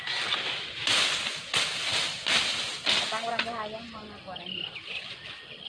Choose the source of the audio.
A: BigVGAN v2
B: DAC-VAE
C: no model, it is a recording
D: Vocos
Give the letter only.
C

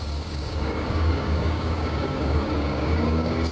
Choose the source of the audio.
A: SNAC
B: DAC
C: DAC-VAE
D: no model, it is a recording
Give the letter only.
B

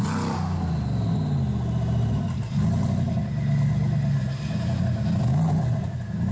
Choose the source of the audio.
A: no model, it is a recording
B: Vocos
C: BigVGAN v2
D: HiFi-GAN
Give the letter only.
A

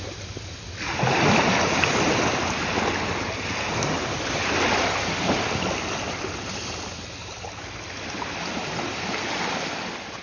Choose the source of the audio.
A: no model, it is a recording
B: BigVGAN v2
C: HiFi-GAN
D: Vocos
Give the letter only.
A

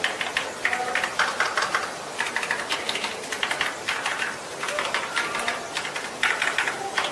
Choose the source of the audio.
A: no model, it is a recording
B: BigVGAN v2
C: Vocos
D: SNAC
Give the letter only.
A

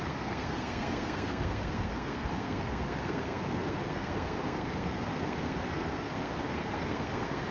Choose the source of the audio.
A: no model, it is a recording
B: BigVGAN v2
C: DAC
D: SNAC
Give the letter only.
D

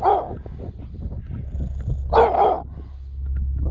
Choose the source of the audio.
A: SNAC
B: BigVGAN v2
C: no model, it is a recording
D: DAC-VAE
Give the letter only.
C